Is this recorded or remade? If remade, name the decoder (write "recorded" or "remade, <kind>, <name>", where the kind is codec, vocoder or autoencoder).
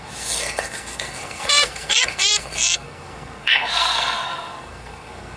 remade, codec, SNAC